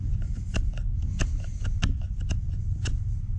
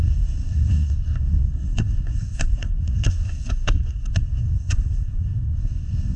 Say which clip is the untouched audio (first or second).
first